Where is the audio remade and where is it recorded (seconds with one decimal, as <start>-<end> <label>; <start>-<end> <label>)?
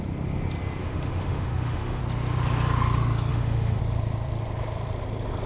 0.0-0.8 recorded; 0.8-2.0 remade; 2.0-3.3 recorded; 3.3-3.8 remade; 3.8-5.5 recorded